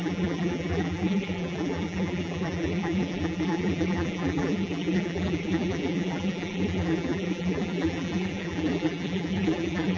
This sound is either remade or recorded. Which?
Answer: remade